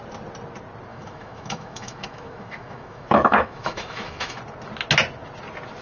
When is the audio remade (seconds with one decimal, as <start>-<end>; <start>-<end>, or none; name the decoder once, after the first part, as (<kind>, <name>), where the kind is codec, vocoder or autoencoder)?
0.9-4.4 (autoencoder, DAC-VAE)